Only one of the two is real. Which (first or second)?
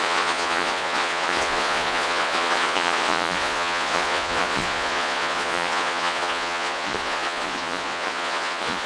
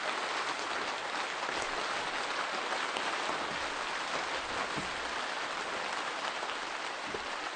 second